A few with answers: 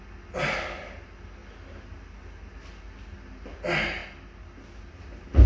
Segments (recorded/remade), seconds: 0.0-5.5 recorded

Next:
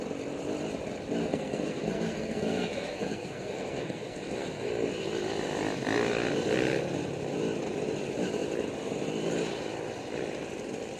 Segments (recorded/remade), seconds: 0.0-1.2 recorded; 1.2-4.7 remade; 4.7-11.0 recorded

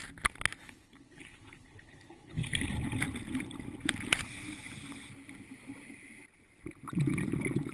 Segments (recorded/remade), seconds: 0.0-0.6 recorded; 0.6-2.7 remade; 2.7-7.7 recorded